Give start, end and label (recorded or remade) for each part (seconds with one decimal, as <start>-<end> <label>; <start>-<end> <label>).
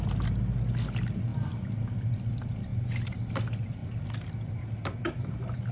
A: 0.0-5.7 recorded